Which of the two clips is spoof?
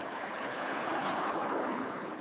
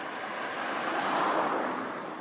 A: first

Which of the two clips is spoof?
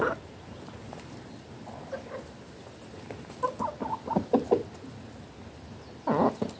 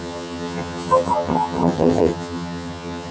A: second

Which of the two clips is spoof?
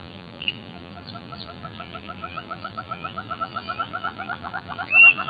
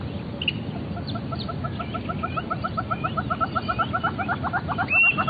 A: first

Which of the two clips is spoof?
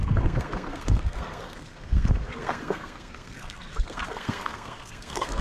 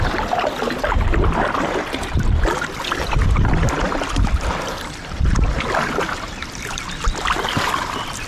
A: first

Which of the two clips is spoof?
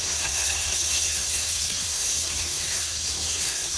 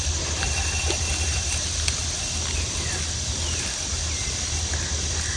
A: first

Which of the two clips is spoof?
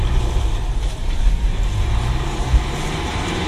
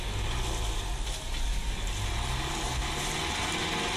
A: first